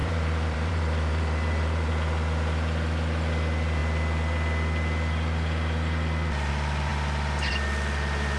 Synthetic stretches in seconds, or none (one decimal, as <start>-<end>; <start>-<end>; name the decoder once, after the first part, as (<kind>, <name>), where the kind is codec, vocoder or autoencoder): 0.0-1.9 (vocoder, BigVGAN v2)